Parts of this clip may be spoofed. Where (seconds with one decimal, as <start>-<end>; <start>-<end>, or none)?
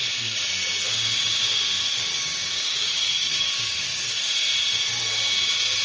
2.1-4.2